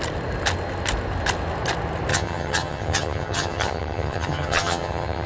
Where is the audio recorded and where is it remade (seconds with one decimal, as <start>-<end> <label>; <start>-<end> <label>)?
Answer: 0.0-2.1 recorded; 2.1-5.3 remade